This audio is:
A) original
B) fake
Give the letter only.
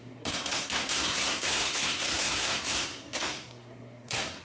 B